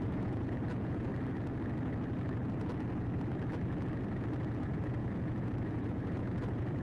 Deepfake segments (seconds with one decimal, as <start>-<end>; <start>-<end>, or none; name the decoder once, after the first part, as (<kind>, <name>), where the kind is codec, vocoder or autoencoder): 0.0-1.1 (vocoder, Vocos); 4.6-6.8